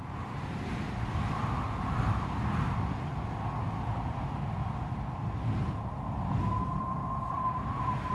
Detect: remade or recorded recorded